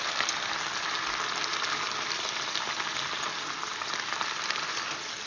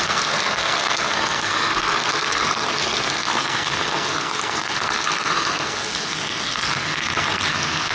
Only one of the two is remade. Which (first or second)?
second